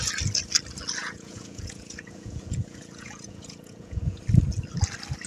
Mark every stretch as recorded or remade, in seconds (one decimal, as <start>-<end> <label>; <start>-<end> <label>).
0.0-1.0 recorded; 1.0-4.2 remade; 4.2-5.3 recorded